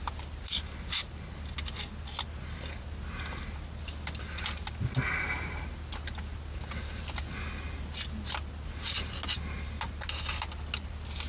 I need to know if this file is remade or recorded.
recorded